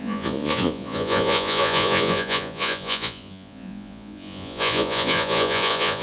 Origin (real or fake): fake